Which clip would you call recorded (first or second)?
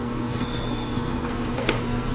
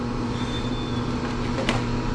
second